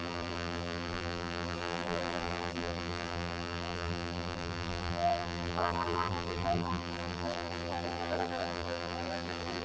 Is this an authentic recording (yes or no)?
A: no